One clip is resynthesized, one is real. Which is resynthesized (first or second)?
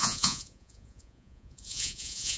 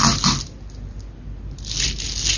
first